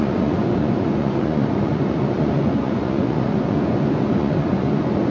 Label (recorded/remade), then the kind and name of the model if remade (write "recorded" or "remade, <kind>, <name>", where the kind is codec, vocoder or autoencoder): remade, vocoder, Vocos